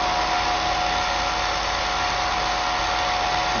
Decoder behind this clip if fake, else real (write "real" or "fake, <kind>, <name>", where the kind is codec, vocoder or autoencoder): real